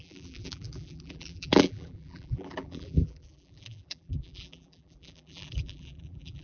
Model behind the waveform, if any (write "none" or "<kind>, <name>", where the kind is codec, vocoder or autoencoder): vocoder, BigVGAN v2